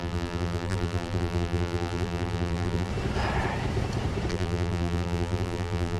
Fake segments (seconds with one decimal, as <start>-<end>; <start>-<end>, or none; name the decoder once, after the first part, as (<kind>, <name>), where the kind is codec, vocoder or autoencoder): 0.0-2.9 (vocoder, BigVGAN v2); 4.3-6.0